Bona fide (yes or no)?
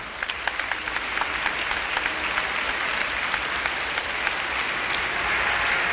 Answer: yes